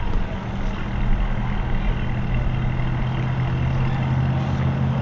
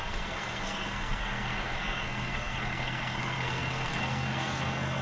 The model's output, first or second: second